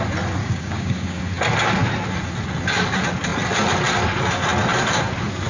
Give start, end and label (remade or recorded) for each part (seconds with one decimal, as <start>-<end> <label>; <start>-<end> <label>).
0.0-0.4 recorded; 0.4-1.2 remade; 1.2-5.5 recorded